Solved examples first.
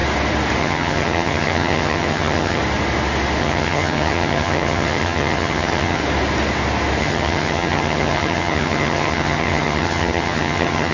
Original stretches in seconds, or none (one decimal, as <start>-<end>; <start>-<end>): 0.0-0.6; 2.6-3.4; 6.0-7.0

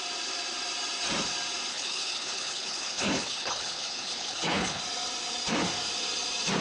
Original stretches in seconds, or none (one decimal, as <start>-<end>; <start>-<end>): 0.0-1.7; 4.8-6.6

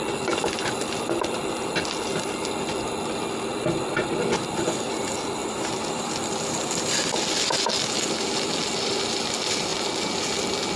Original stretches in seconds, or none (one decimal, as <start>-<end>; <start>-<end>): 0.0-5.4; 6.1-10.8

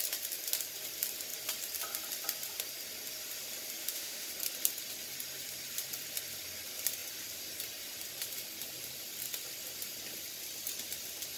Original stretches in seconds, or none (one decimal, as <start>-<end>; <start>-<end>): 0.0-3.8; 4.3-11.4

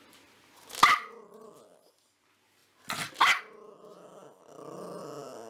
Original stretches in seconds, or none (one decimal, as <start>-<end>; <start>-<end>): 0.0-5.5